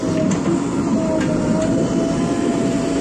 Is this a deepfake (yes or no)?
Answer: no